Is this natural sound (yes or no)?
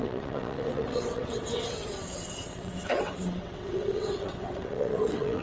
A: no